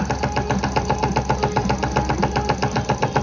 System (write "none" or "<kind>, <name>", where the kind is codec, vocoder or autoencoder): none